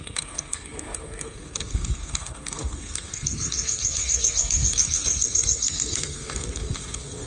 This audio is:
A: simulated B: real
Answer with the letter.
A